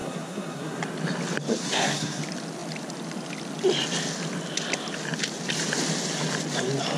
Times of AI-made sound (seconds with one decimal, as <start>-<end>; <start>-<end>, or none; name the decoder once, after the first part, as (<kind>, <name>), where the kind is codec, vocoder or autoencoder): 0.0-0.8 (codec, SNAC); 1.5-2.2